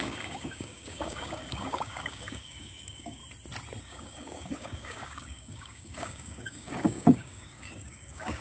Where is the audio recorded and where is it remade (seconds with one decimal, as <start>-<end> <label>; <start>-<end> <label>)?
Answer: 0.0-3.2 remade; 3.2-3.8 recorded; 3.8-8.4 remade